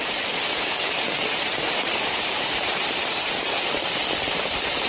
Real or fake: fake